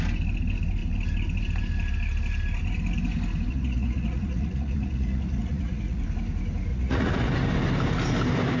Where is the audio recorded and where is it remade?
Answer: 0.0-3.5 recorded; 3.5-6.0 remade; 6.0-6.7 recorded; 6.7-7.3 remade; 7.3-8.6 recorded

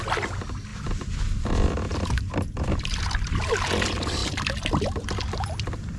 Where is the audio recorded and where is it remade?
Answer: 0.0-6.0 recorded

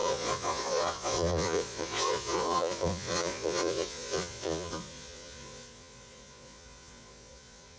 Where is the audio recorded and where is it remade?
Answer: 0.0-7.8 remade

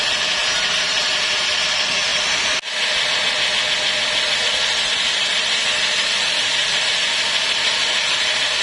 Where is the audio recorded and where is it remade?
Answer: 0.0-8.6 recorded

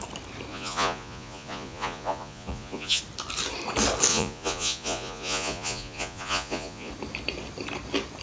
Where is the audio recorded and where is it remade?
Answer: 0.0-0.5 recorded; 0.5-3.0 remade; 3.0-4.1 recorded; 4.1-6.9 remade; 6.9-8.2 recorded